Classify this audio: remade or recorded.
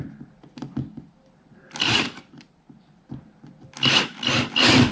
recorded